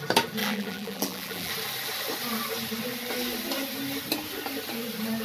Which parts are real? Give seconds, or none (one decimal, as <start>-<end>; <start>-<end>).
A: 0.0-0.4; 1.5-5.2